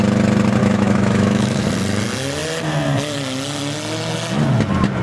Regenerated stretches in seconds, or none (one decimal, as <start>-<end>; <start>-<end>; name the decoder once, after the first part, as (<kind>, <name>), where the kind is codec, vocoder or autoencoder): 0.6-1.7 (autoencoder, DAC-VAE)